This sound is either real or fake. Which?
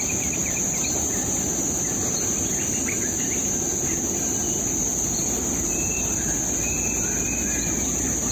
real